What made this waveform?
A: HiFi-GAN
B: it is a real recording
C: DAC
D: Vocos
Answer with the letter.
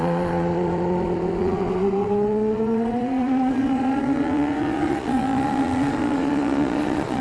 D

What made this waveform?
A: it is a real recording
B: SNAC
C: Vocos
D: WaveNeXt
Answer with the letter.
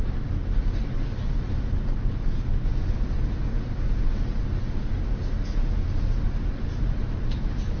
A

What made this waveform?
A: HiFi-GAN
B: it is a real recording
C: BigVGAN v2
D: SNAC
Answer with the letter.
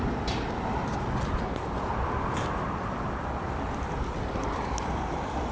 C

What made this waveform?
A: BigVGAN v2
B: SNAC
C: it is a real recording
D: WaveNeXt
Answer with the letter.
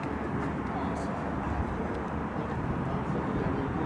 C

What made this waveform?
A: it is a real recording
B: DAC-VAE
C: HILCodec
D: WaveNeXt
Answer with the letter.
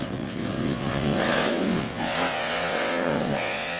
D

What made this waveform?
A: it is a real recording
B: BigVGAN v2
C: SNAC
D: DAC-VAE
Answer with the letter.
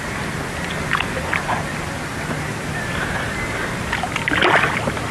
A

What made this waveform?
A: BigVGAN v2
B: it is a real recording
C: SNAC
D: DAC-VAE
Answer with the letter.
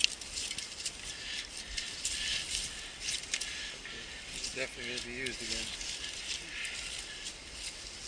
B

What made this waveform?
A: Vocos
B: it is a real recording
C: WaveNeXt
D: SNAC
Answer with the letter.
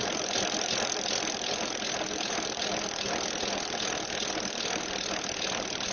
B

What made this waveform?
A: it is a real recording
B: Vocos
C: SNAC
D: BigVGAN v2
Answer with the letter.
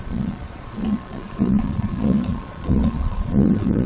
B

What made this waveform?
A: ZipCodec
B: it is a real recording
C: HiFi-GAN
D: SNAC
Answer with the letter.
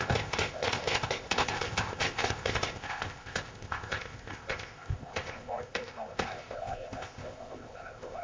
A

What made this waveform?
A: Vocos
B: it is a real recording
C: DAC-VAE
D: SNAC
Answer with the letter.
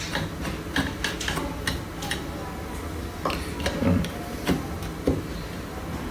B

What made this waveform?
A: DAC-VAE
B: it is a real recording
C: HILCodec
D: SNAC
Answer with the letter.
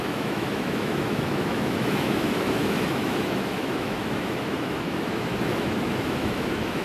A